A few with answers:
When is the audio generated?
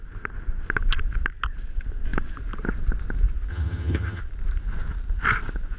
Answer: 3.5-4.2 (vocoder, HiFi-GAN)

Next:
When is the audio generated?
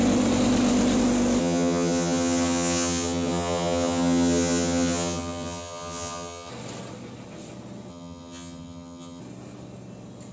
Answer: 1.4-6.5 (vocoder, HiFi-GAN); 7.9-9.2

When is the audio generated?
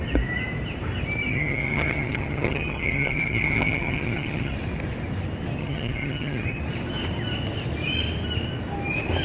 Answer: 1.3-4.5 (vocoder, HiFi-GAN); 5.6-6.6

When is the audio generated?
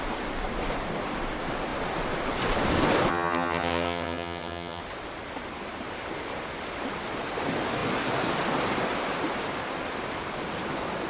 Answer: 3.1-4.8 (vocoder, HiFi-GAN)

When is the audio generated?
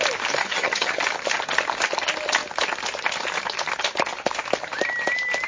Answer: 0.4-1.0 (vocoder, HiFi-GAN)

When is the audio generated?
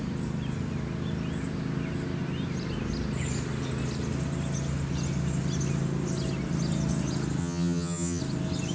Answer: 7.4-8.2 (vocoder, HiFi-GAN)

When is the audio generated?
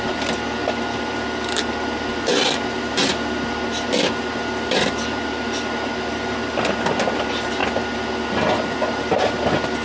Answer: none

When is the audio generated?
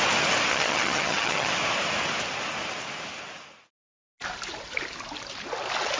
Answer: 0.5-1.5 (vocoder, HiFi-GAN)